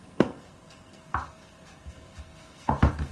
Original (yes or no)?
no